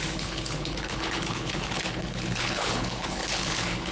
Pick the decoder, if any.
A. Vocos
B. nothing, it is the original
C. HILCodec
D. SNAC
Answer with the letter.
C